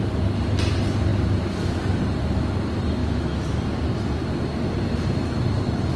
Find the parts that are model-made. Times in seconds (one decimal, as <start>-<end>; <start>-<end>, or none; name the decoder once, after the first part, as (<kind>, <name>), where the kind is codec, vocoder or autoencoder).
3.0-3.6 (autoencoder, DAC-VAE)